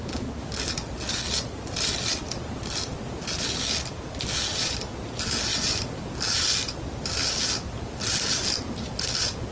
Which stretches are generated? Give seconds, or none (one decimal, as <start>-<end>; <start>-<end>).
none